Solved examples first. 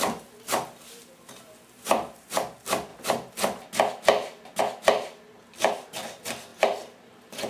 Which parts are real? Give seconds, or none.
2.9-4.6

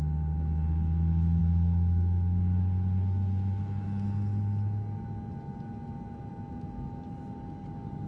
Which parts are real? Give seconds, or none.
0.0-8.1

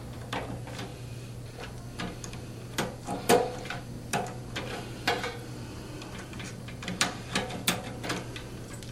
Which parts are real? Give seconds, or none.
0.0-8.9